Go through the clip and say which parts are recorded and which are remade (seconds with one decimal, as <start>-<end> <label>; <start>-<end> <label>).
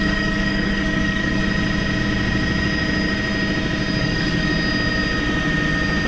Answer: 0.0-1.4 remade; 1.4-4.0 recorded; 4.0-4.5 remade; 4.5-6.1 recorded